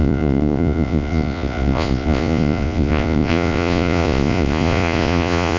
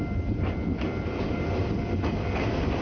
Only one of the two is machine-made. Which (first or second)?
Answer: first